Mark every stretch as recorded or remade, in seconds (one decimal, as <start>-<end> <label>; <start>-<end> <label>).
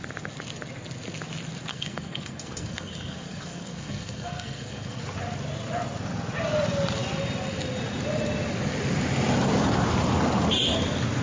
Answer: 0.0-1.7 recorded; 1.7-5.0 remade; 5.0-11.2 recorded